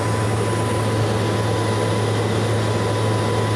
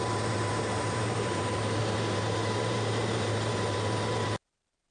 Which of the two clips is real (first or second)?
first